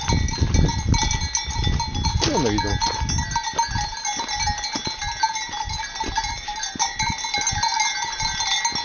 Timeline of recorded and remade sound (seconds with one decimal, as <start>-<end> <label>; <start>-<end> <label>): 0.0-8.8 recorded

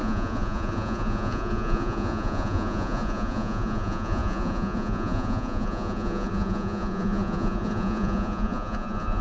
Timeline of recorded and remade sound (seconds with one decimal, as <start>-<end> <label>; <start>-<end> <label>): 0.0-9.2 remade

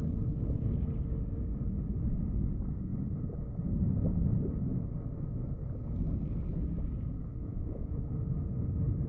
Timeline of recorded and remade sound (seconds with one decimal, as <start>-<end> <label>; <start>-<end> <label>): 0.0-7.4 recorded; 7.4-8.0 remade; 8.0-9.1 recorded

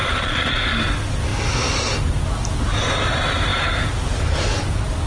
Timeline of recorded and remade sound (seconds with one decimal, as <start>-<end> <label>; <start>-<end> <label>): 0.0-0.6 remade; 0.6-5.1 recorded

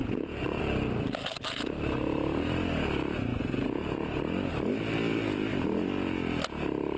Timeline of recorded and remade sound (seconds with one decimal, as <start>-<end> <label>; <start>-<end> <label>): 0.0-0.6 remade; 0.6-3.3 recorded; 3.3-4.2 remade; 4.2-7.0 recorded

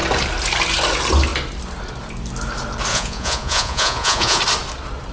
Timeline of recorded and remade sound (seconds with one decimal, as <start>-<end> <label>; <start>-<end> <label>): 0.0-2.9 recorded; 2.9-4.4 remade; 4.4-5.1 recorded

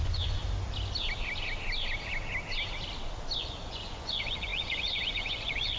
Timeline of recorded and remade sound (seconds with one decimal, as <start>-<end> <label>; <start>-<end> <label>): 0.0-0.4 remade; 0.4-3.4 recorded; 3.4-5.8 remade